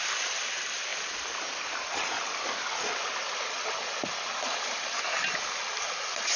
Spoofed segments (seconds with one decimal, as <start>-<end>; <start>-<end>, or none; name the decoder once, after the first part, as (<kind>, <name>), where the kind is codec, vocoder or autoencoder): none